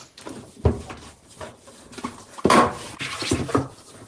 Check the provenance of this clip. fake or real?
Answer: real